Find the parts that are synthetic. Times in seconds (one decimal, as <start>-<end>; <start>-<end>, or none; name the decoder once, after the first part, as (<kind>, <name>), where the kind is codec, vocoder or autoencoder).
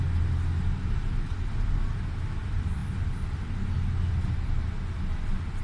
none